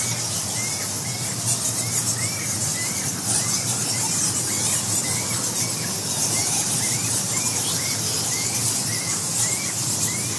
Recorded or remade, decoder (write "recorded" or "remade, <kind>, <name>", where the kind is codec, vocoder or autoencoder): recorded